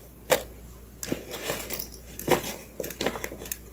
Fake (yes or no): no